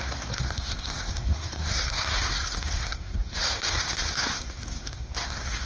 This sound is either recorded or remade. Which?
remade